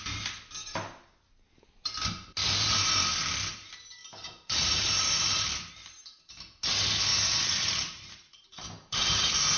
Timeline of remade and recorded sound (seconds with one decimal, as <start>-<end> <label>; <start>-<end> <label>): 0.0-2.4 recorded; 2.4-3.0 remade; 3.0-4.0 recorded; 4.0-5.7 remade; 5.7-7.1 recorded; 7.1-9.2 remade; 9.2-9.6 recorded